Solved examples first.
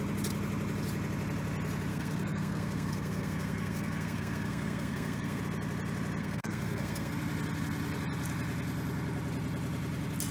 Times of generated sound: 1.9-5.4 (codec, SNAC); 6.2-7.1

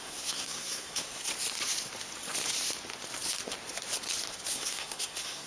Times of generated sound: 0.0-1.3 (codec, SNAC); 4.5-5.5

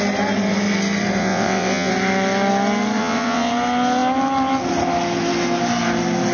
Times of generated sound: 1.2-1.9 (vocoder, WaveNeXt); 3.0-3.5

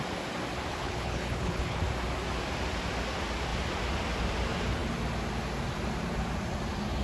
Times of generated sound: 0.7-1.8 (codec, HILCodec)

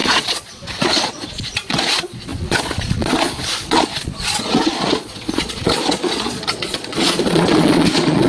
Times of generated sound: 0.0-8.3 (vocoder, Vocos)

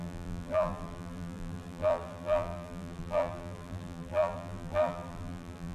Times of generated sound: 0.0-5.7 (vocoder, BigVGAN v2)

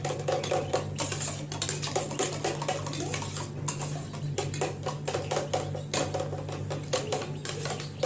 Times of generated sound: none

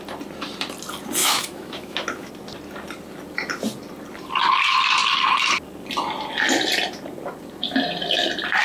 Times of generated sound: 1.2-2.3 (autoencoder, DAC-VAE)